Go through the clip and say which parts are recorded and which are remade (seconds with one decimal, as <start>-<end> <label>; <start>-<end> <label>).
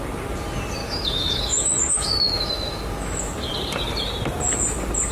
0.0-0.8 recorded; 0.8-3.3 remade; 3.3-5.1 recorded